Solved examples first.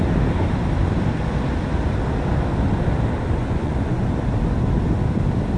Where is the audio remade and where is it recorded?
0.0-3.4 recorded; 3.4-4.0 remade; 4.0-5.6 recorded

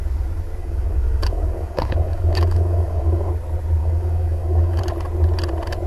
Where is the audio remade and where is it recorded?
0.0-0.6 recorded; 0.6-3.3 remade; 3.3-3.8 recorded; 3.8-4.8 remade; 4.8-5.9 recorded

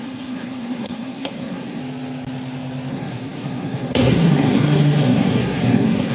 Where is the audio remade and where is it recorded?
0.0-1.8 remade; 1.8-2.9 recorded; 2.9-6.1 remade

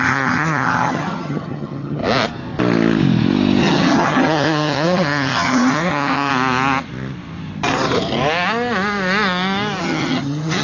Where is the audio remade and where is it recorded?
0.0-2.0 remade; 2.0-3.6 recorded; 3.6-6.3 remade; 6.3-9.8 recorded; 9.8-10.6 remade

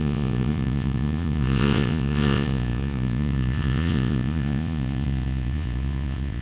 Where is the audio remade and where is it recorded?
0.0-6.4 remade